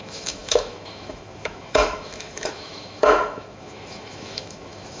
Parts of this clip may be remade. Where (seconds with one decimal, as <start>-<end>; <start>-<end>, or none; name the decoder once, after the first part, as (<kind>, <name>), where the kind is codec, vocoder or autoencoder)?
0.0-5.0 (autoencoder, DAC-VAE)